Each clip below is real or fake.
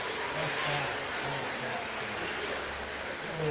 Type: real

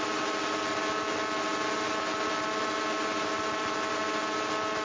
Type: real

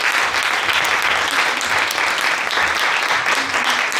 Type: real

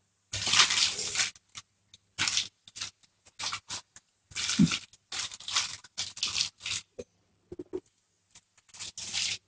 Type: real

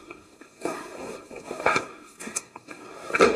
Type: fake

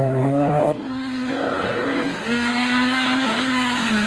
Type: fake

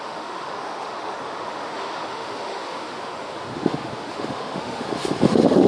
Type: fake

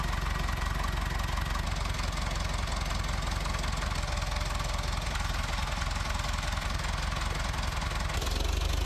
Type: real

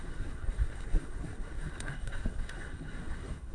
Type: fake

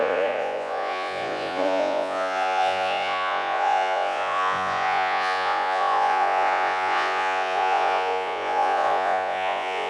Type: fake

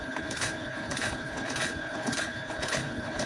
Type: fake